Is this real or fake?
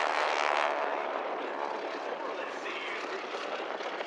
real